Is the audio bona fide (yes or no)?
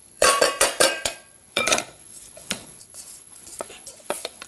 no